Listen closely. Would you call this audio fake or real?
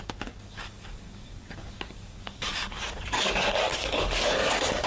fake